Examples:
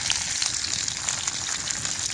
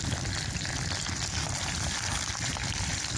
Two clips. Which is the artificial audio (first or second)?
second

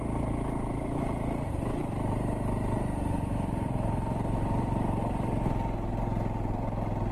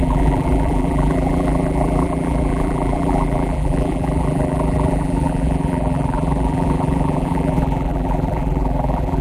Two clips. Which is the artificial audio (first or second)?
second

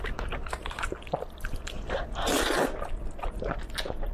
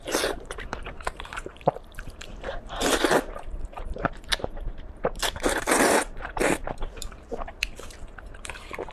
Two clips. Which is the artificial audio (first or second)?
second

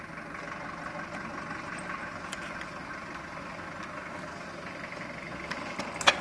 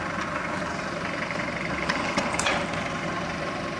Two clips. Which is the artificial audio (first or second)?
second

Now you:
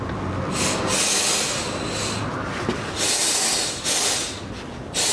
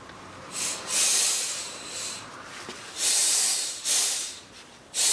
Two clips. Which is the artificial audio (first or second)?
second